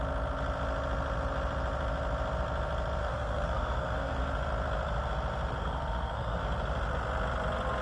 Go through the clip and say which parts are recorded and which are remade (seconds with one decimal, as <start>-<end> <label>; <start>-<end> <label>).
0.0-3.0 recorded; 3.0-4.2 remade; 4.2-5.6 recorded; 5.6-6.4 remade; 6.4-7.8 recorded